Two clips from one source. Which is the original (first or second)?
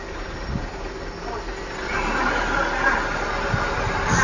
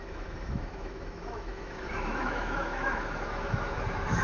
first